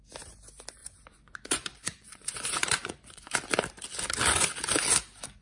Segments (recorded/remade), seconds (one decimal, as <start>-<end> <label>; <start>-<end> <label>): 0.0-0.8 recorded; 0.8-3.3 remade; 3.3-5.4 recorded